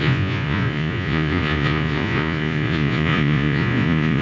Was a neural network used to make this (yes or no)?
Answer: yes